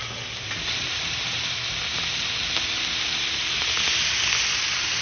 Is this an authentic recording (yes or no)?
yes